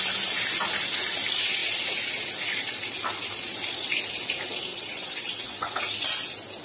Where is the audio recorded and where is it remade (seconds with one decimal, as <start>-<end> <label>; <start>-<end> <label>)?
0.0-4.7 recorded; 4.7-5.8 remade; 5.8-6.6 recorded